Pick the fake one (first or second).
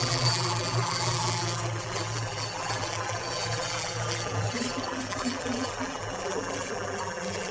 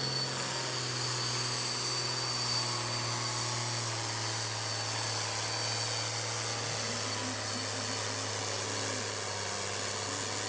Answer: first